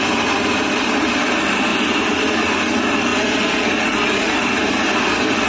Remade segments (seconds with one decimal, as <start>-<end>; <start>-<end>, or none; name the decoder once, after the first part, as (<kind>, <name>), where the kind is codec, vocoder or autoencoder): none